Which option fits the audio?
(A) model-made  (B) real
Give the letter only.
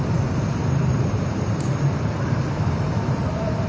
A